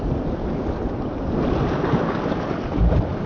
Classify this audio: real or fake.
real